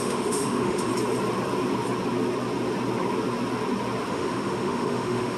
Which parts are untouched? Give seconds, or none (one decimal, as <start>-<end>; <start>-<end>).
0.9-4.1